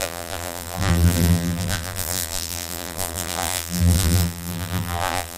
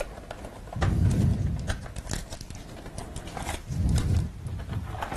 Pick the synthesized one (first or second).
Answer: first